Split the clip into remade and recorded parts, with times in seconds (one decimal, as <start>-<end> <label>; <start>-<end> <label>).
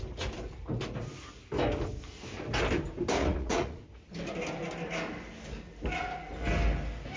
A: 0.0-3.2 recorded; 3.2-3.8 remade; 3.8-7.2 recorded